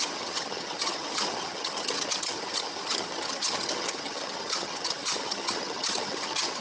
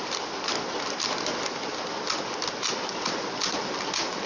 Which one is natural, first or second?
second